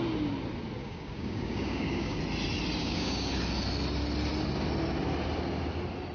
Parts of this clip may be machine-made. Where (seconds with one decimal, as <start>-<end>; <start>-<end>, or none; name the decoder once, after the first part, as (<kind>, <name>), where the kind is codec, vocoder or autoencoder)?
0.8-2.2 (codec, DAC); 2.8-3.3